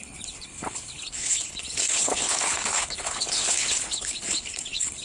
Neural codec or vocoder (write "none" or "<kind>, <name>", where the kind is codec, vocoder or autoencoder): codec, HILCodec